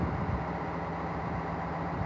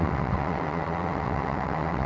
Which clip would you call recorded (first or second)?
first